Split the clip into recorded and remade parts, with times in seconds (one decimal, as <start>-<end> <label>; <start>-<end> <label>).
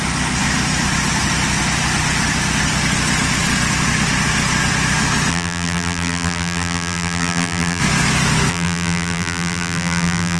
0.0-5.3 recorded; 5.3-7.8 remade; 7.8-8.5 recorded; 8.5-10.4 remade